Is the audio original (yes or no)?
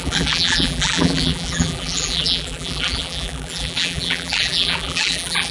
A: no